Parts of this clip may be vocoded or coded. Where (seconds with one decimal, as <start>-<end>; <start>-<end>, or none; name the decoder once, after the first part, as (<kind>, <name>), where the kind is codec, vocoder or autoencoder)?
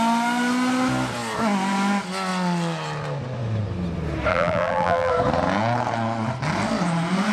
4.3-5.1 (vocoder, BigVGAN v2)